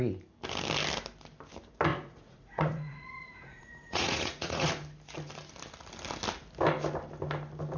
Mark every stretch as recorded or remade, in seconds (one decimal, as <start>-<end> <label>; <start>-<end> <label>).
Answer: 0.0-1.9 recorded; 1.9-4.7 remade; 4.7-7.8 recorded